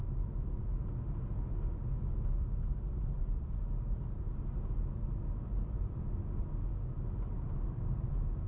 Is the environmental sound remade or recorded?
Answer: recorded